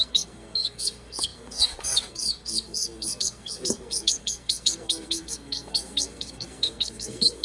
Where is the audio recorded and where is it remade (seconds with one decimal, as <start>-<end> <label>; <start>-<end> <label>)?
0.0-7.4 remade